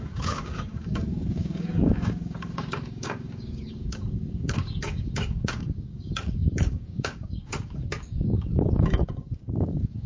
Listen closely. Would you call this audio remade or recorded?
remade